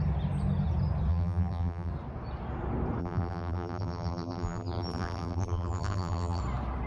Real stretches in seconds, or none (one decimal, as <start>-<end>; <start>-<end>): 0.0-1.1; 1.9-3.0; 6.4-6.9